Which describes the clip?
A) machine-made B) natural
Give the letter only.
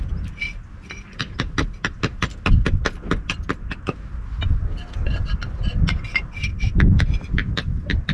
B